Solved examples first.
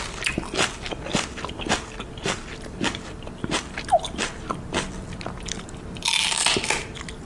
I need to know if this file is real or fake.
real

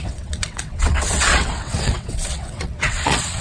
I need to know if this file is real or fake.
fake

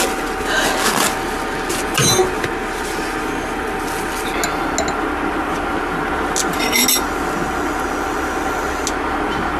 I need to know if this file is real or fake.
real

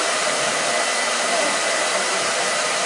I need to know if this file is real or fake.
fake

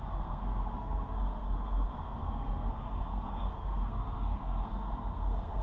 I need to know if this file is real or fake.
fake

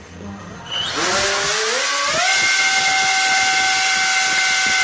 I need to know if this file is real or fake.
real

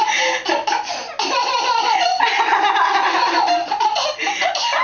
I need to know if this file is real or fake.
real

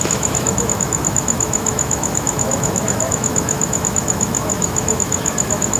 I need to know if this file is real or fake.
fake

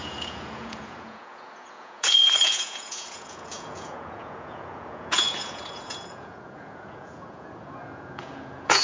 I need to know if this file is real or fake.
fake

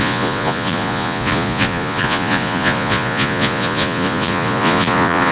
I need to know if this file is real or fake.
fake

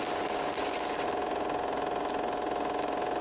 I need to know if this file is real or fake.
real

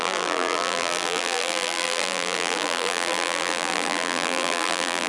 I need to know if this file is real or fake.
fake